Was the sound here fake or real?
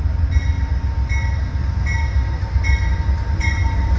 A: real